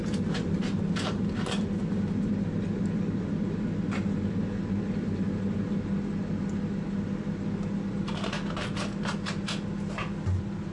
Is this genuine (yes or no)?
yes